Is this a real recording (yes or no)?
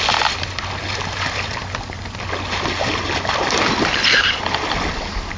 yes